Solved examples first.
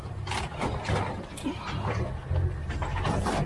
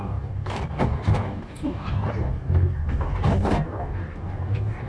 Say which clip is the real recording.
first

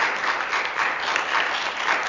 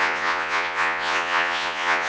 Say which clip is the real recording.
first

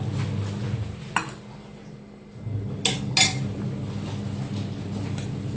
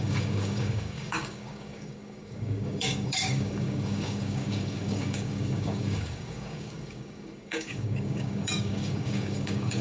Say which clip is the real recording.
first